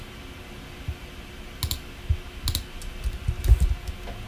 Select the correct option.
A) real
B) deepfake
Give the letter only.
A